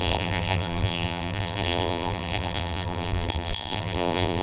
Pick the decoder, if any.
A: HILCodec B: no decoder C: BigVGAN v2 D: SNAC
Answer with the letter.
C